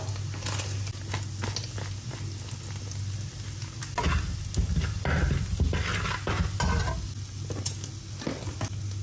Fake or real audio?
real